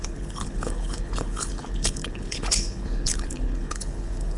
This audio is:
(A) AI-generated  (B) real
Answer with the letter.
A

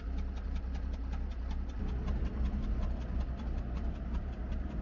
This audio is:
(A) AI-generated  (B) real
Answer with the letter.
B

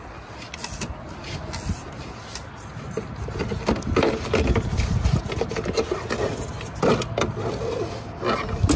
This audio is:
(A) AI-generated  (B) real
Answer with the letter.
B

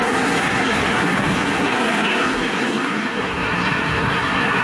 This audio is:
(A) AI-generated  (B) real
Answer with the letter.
A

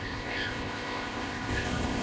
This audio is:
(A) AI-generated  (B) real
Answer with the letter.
A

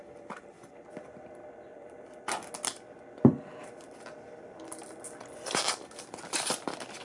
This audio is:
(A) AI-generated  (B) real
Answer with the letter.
B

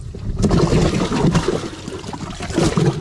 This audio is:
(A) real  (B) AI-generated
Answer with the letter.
A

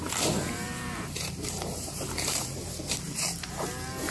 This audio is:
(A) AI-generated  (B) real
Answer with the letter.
A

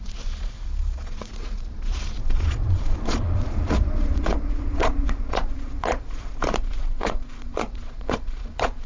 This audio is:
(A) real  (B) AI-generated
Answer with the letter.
B